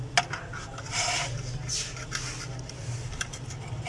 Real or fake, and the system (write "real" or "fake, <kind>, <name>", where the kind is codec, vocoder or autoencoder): real